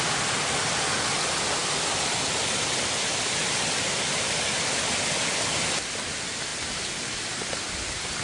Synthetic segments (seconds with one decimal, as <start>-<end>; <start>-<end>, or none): none